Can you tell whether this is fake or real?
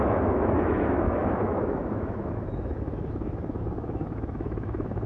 fake